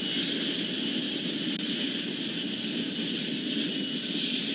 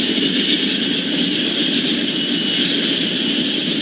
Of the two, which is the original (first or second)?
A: first